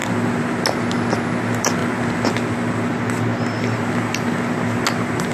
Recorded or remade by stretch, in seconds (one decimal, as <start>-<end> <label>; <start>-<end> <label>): 0.0-5.3 recorded